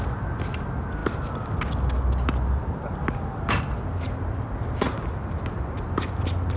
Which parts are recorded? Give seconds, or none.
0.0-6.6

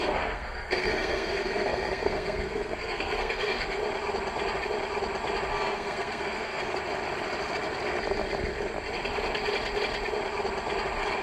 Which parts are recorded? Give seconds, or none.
3.8-5.5; 6.6-11.2